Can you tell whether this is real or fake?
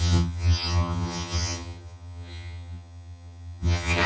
fake